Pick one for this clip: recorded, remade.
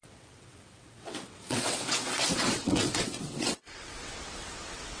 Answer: remade